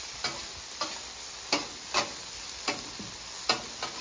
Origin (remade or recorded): recorded